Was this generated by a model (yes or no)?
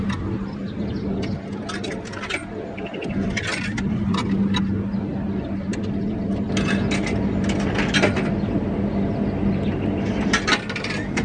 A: no